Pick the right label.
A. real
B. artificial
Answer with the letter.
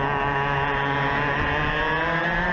A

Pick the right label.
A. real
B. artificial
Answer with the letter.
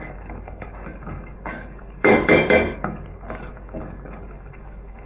B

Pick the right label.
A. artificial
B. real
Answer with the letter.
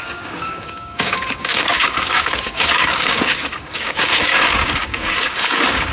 A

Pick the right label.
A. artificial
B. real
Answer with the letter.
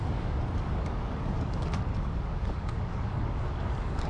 A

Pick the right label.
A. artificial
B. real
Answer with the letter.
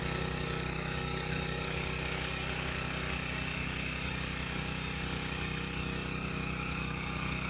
A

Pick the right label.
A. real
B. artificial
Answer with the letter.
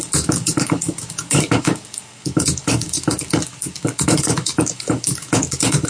B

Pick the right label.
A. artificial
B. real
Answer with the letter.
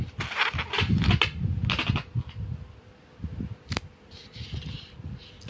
B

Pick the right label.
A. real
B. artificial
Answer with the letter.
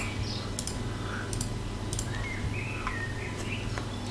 A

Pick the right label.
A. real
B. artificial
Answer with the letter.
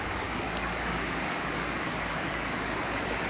B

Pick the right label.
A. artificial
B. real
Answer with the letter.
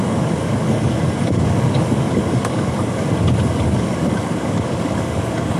A